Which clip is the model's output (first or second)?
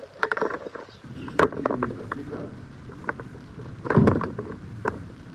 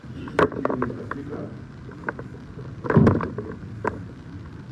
first